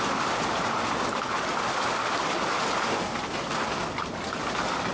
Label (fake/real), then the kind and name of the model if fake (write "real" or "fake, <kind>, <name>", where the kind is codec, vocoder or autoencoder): real